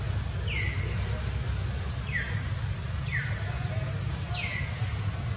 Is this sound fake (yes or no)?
no